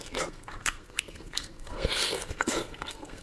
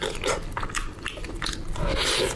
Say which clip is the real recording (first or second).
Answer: second